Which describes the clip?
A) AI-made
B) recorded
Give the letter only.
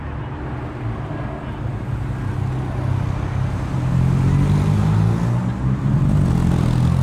B